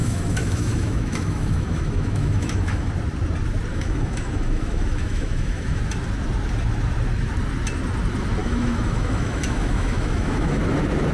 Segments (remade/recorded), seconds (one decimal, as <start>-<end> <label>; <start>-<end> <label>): 0.0-2.9 remade; 2.9-3.7 recorded; 3.7-5.8 remade; 5.8-8.4 recorded; 8.4-10.6 remade; 10.6-11.1 recorded